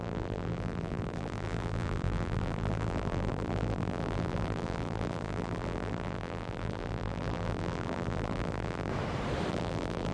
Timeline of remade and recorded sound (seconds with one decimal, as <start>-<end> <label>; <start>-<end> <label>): 0.0-8.9 remade; 8.9-9.5 recorded; 9.5-10.1 remade